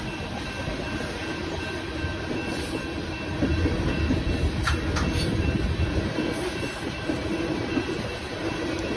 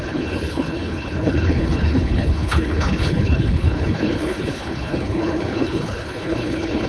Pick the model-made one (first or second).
second